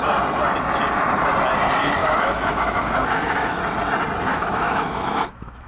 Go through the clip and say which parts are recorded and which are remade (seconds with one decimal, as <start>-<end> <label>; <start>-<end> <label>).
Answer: 0.0-2.0 recorded; 2.0-3.6 remade; 3.6-4.3 recorded; 4.3-5.7 remade

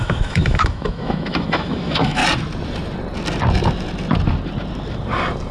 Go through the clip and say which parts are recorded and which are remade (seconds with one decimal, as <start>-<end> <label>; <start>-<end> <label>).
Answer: 0.0-2.2 remade; 2.2-5.5 recorded

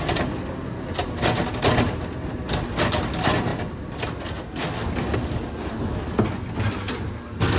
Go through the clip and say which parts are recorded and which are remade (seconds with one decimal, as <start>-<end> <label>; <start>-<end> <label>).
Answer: 0.0-7.6 recorded

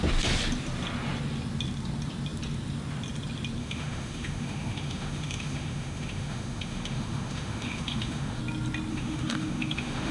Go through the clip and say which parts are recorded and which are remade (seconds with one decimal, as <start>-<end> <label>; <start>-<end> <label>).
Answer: 0.0-3.6 recorded; 3.6-8.4 remade; 8.4-8.9 recorded; 8.9-10.1 remade

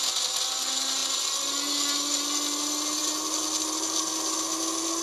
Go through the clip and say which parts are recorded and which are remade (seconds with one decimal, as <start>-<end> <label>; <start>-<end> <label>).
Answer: 0.0-5.0 recorded

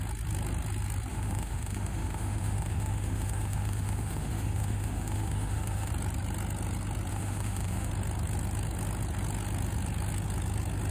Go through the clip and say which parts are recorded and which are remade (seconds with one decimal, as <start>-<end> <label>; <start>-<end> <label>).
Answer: 0.0-1.1 recorded; 1.1-5.9 remade; 5.9-7.1 recorded; 7.1-7.9 remade; 7.9-10.9 recorded

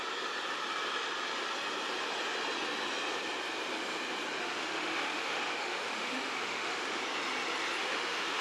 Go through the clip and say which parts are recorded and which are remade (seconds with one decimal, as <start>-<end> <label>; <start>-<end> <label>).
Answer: 0.0-4.4 recorded; 4.4-7.0 remade; 7.0-7.8 recorded; 7.8-8.4 remade

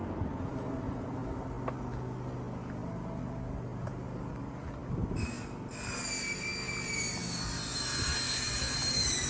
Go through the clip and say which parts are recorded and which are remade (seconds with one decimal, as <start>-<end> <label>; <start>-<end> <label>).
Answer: 0.0-9.3 recorded